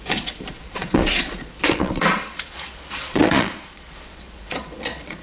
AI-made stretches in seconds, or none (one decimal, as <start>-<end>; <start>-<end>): 0.0-5.2

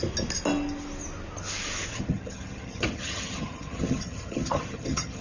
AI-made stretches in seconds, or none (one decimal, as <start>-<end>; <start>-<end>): 1.9-5.2

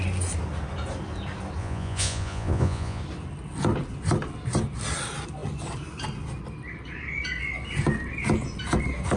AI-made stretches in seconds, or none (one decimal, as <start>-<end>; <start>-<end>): 1.6-3.0